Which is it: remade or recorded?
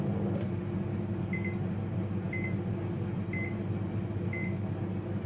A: recorded